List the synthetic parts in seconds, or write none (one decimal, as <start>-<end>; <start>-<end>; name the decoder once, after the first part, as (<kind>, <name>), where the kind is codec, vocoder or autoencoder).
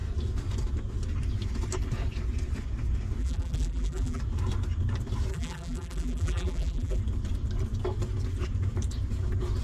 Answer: 3.2-4.2 (vocoder, BigVGAN v2); 5.3-7.0